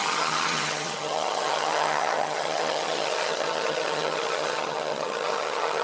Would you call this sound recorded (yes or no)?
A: no